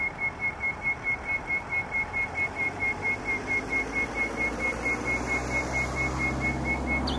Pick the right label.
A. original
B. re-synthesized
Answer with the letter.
A